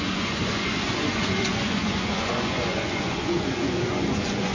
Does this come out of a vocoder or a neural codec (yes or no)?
yes